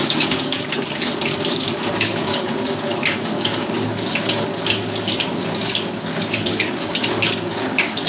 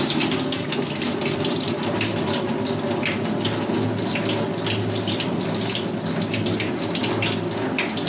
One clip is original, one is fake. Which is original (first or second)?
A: second